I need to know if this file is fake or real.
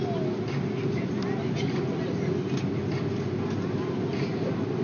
real